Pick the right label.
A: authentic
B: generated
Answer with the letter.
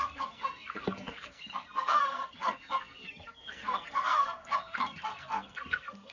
B